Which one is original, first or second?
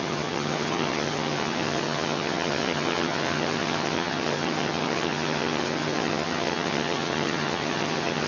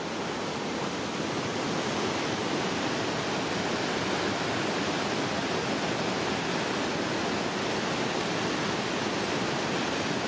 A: second